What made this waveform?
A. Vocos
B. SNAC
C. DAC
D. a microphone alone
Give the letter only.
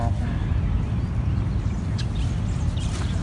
D